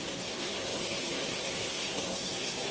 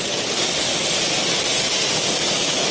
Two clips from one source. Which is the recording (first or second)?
second